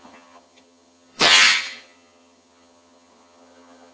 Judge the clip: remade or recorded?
remade